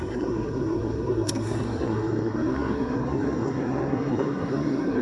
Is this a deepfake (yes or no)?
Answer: yes